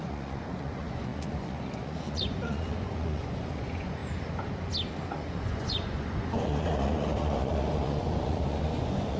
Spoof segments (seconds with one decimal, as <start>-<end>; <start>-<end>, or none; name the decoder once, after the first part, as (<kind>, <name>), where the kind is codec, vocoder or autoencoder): 0.0-4.0 (vocoder, Vocos); 5.1-9.2